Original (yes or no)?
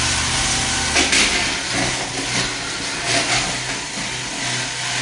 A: yes